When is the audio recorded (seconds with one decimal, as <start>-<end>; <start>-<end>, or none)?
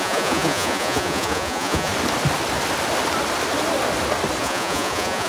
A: 1.9-4.4